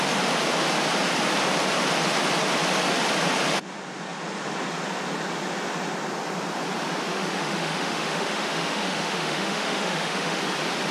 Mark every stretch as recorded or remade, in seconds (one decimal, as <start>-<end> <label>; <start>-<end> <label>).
0.0-7.1 recorded; 7.1-10.4 remade; 10.4-10.9 recorded